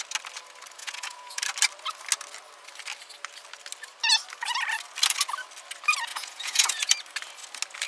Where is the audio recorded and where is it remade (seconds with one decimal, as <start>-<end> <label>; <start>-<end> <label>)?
0.0-0.8 recorded; 0.8-1.4 remade; 1.4-6.1 recorded; 6.1-6.9 remade; 6.9-7.9 recorded